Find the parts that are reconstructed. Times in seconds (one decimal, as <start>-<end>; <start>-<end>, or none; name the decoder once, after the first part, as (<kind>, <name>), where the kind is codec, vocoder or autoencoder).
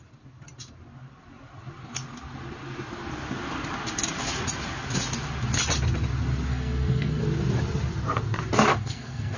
6.5-7.2 (codec, SNAC); 8.7-9.4